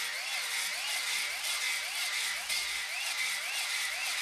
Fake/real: real